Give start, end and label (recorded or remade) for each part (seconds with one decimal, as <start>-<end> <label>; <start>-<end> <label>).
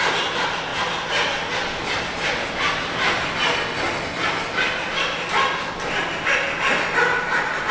0.0-7.7 recorded